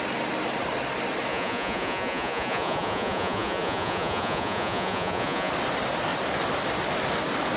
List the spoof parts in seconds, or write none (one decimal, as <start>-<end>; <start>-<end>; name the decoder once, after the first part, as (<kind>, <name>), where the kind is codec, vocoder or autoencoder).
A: 1.3-5.5 (vocoder, Vocos)